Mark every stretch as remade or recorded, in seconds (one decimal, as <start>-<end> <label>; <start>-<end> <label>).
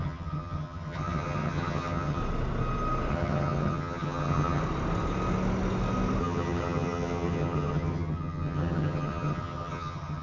0.0-2.2 remade; 2.2-3.1 recorded; 3.1-4.6 remade; 4.6-6.2 recorded; 6.2-10.2 remade